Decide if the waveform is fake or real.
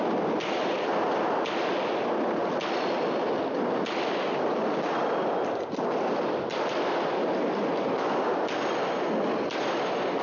real